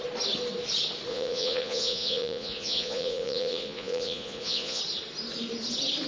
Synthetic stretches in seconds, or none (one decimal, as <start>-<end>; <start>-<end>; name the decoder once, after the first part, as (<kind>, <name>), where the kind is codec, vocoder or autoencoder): 1.1-4.8 (vocoder, Vocos)